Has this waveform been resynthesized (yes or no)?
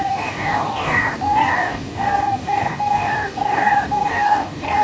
yes